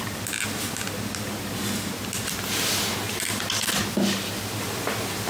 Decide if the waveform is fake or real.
real